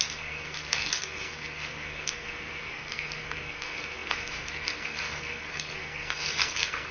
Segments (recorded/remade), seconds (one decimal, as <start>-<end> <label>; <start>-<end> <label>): 0.0-6.9 remade